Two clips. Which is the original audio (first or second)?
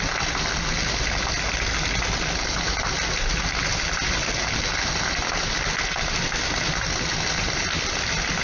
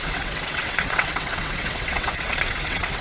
first